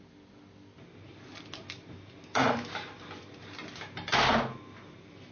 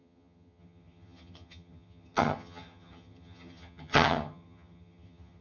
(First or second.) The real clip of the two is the first